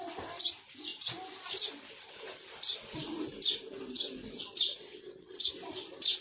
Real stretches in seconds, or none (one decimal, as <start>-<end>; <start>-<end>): 0.0-4.7; 5.5-6.2